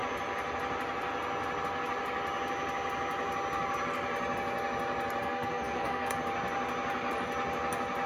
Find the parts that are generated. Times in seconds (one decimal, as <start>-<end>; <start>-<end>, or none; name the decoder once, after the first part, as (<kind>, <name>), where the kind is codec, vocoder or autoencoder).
5.2-6.2 (codec, SNAC)